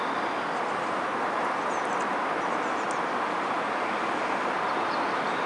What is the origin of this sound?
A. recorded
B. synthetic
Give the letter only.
A